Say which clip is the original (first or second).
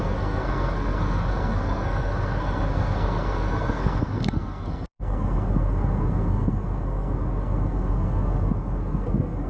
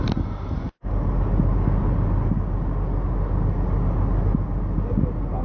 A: second